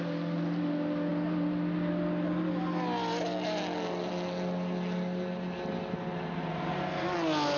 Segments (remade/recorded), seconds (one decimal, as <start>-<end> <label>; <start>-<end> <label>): 0.0-7.6 recorded